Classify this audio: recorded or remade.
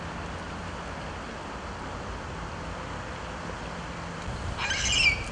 recorded